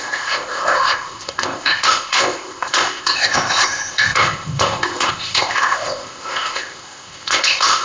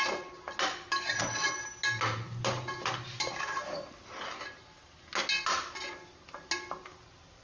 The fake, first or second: first